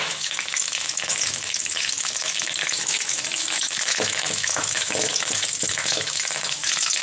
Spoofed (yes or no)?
yes